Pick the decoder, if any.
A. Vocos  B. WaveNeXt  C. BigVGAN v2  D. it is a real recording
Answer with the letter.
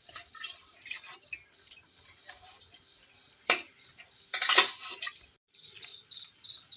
C